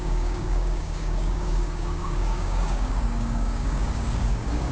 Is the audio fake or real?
fake